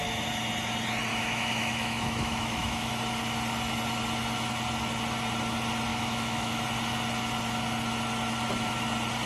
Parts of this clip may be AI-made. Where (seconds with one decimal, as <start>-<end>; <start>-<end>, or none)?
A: 1.1-2.9; 5.9-6.6